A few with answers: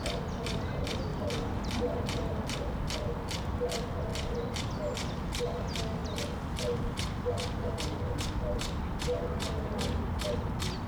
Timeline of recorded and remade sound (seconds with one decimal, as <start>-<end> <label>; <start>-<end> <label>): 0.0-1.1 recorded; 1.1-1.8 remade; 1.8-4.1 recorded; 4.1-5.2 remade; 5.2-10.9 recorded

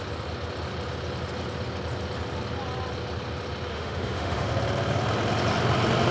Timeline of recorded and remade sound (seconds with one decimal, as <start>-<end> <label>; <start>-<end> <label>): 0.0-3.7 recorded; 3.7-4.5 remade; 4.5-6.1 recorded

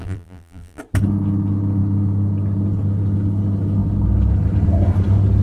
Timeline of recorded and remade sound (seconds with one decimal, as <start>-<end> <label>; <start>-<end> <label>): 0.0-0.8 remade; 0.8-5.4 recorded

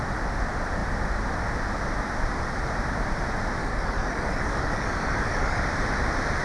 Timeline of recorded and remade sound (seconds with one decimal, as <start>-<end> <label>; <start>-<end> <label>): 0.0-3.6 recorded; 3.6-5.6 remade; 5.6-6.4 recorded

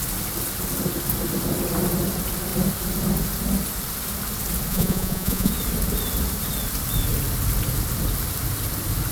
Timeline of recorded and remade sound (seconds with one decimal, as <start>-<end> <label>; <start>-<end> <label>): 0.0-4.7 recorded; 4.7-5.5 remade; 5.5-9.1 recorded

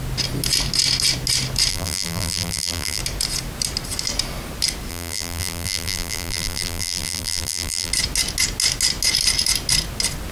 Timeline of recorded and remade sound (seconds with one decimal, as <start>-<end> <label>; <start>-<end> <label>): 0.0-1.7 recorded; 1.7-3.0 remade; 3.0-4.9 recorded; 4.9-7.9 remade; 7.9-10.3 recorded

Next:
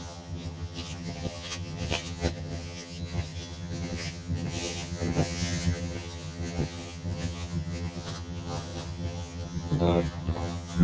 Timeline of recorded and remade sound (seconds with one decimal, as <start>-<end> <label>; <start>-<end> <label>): 0.0-10.8 remade